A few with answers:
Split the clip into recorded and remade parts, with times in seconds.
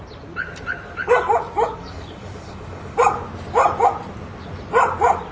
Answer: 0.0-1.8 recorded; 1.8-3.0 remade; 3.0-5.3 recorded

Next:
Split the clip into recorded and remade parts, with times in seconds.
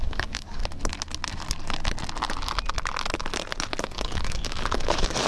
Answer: 0.0-0.6 remade; 0.6-3.8 recorded; 3.8-5.3 remade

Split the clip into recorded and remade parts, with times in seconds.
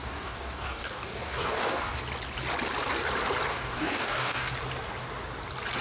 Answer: 0.0-2.0 remade; 2.0-3.5 recorded; 3.5-4.5 remade; 4.5-5.8 recorded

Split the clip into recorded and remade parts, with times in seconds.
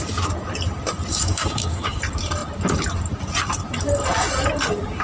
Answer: 0.0-1.1 recorded; 1.1-2.0 remade; 2.0-5.0 recorded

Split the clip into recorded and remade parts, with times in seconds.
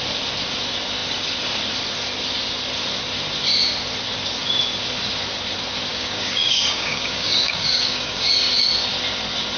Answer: 0.0-5.9 recorded; 5.9-8.3 remade; 8.3-9.6 recorded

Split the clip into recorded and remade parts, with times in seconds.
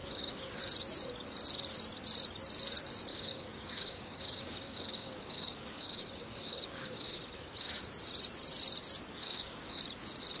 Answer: 0.0-0.6 remade; 0.6-3.1 recorded; 3.1-7.8 remade; 7.8-9.2 recorded; 9.2-9.8 remade; 9.8-10.4 recorded